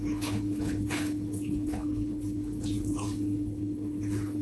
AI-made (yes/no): yes